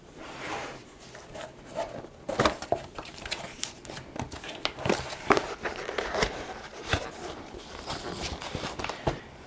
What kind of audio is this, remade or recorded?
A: remade